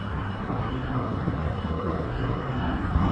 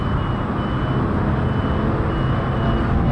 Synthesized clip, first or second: first